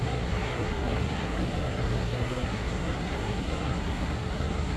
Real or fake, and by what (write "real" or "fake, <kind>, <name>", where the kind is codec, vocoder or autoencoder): fake, codec, SNAC